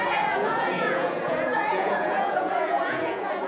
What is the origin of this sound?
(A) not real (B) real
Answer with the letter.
A